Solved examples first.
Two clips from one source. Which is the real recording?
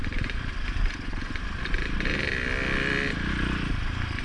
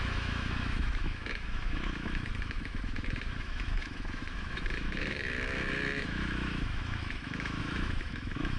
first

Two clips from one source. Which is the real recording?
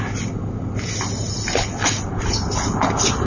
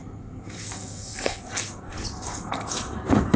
first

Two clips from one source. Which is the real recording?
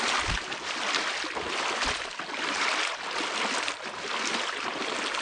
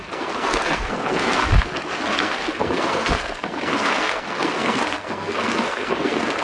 first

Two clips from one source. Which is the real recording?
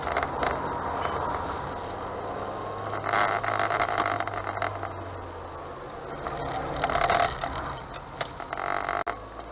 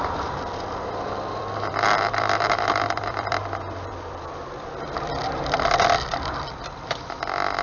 first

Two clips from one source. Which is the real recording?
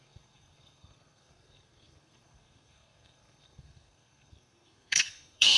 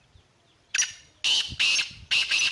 second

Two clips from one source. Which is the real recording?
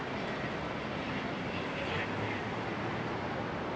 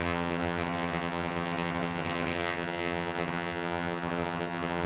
first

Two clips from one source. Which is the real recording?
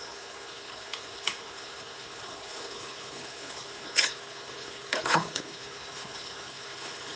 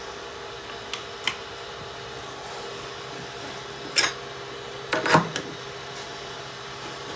second